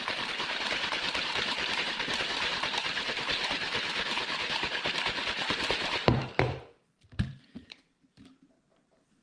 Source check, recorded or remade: remade